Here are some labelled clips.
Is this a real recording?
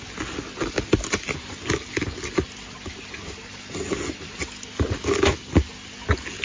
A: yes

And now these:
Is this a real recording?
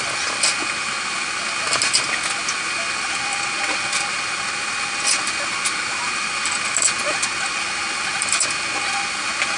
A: yes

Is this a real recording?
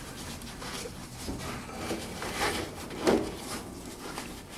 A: yes